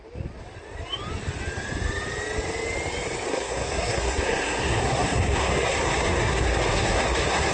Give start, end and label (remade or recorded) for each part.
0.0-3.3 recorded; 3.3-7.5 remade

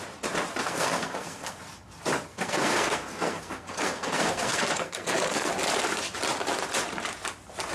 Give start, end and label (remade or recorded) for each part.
0.0-0.6 recorded; 0.6-1.6 remade; 1.6-2.3 recorded; 2.3-5.5 remade; 5.5-7.7 recorded

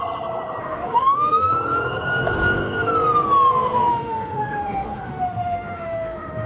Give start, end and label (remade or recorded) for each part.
0.0-0.6 recorded; 0.6-1.5 remade; 1.5-3.9 recorded; 3.9-6.5 remade

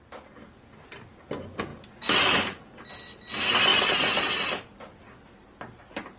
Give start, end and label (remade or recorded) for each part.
0.0-6.2 recorded